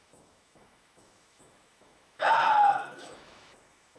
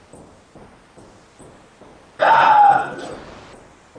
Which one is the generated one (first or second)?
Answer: first